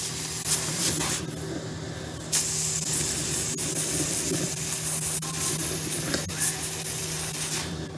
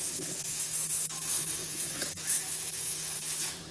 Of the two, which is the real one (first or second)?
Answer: first